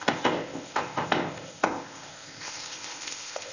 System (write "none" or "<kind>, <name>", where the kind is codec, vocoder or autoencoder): codec, ZipCodec